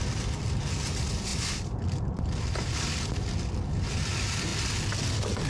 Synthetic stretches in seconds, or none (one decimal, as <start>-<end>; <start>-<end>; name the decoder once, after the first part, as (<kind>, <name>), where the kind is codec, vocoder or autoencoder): none

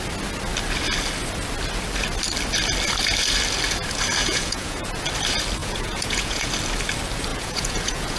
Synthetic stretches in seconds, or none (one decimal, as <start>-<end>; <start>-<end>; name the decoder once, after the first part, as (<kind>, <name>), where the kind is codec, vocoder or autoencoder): 4.2-5.0 (vocoder, Vocos); 5.6-6.5; 7.3-8.2

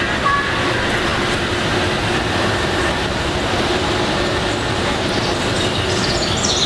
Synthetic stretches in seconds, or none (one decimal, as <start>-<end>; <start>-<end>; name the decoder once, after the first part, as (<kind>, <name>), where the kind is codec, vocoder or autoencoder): none

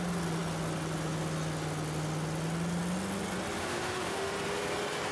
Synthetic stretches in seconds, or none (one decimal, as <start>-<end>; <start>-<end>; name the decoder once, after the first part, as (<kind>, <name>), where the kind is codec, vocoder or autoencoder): 3.6-4.3 (autoencoder, DAC-VAE)

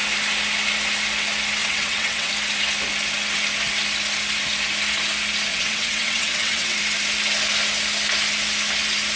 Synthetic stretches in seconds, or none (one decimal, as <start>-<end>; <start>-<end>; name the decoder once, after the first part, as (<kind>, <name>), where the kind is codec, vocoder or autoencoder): 1.6-2.3 (vocoder, WaveNeXt); 5.5-6.8

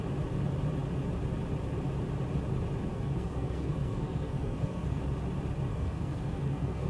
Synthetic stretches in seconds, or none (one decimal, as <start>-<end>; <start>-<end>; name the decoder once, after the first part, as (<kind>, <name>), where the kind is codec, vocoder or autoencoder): 2.9-5.0 (codec, SNAC); 5.7-6.9

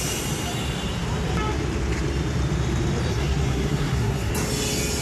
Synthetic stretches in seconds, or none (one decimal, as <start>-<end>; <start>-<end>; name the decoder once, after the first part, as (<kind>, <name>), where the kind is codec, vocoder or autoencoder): 3.1-4.3 (codec, SNAC)

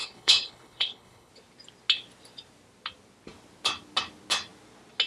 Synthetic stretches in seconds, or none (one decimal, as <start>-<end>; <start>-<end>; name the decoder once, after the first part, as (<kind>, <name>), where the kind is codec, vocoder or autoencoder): 0.0-1.3 (codec, HILCodec)